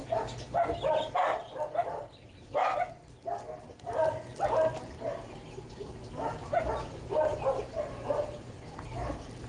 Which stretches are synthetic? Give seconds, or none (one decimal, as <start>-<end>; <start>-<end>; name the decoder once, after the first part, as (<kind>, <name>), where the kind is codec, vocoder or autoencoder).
none